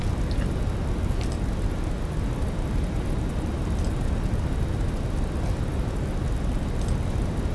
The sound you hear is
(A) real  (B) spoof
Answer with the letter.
A